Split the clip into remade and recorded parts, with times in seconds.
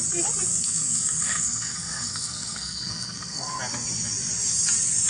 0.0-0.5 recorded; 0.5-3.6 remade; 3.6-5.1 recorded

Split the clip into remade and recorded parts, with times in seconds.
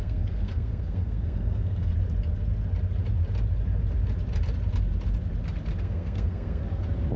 0.0-1.9 remade; 1.9-5.8 recorded; 5.8-6.6 remade; 6.6-7.2 recorded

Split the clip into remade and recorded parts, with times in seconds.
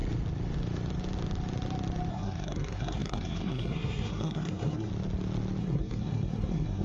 0.0-2.1 recorded; 2.1-4.9 remade; 4.9-5.6 recorded; 5.6-6.8 remade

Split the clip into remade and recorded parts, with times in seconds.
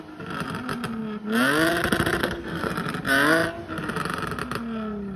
0.0-2.2 recorded; 2.2-2.7 remade; 2.7-5.2 recorded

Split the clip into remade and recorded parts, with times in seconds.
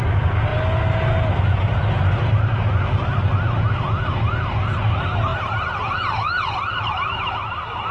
0.0-7.9 recorded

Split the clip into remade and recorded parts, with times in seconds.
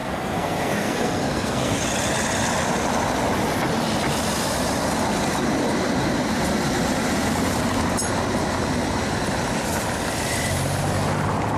0.0-1.8 remade; 1.8-11.6 recorded